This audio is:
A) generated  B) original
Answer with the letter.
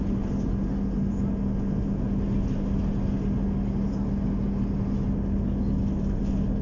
B